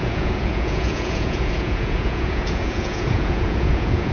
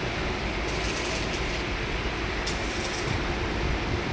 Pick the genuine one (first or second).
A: second